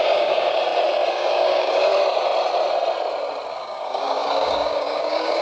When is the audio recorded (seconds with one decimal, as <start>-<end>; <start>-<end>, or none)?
0.6-1.1; 1.9-3.5